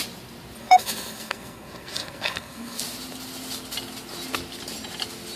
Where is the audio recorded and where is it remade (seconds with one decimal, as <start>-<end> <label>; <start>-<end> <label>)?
0.0-0.6 recorded; 0.6-2.8 remade; 2.8-5.4 recorded